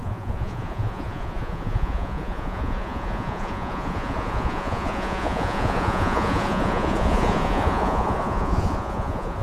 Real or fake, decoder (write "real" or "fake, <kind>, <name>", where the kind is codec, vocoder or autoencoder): fake, vocoder, Vocos